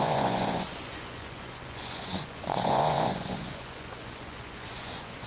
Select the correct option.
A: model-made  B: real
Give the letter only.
A